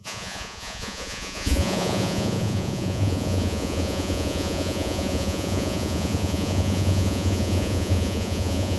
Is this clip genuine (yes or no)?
no